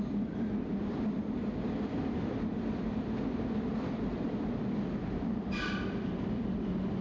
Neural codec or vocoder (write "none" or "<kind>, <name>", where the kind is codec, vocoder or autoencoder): vocoder, BigVGAN v2